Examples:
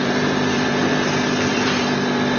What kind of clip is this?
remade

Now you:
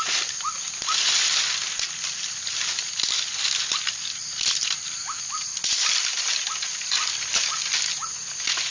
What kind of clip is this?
recorded